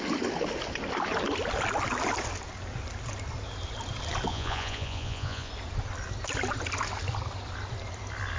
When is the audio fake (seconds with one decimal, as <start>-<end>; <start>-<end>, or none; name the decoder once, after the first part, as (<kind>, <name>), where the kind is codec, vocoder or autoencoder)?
4.3-5.5 (vocoder, Vocos)